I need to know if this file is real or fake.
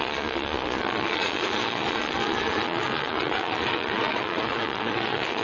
fake